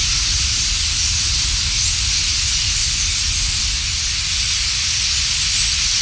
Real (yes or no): yes